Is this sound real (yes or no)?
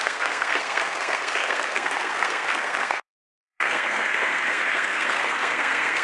no